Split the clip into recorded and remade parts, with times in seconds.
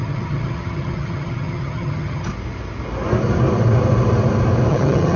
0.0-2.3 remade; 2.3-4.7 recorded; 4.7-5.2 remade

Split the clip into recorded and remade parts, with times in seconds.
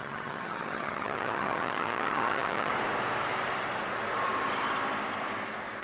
0.0-2.7 remade; 2.7-5.8 recorded